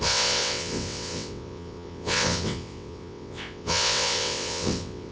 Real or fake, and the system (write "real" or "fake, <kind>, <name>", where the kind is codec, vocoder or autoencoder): fake, vocoder, WaveNeXt